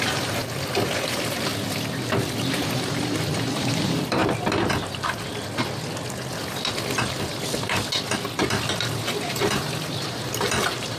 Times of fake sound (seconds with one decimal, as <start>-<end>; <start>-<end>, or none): 0.0-0.4; 1.1-1.5; 2.4-4.2; 9.3-11.0